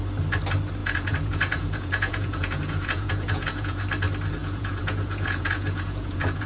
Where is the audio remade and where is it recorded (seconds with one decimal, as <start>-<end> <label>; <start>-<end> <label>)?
0.0-0.8 recorded; 0.8-3.8 remade; 3.8-4.4 recorded; 4.4-6.5 remade